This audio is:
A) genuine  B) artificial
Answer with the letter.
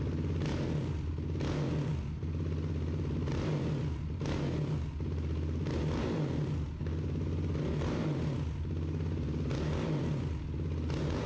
A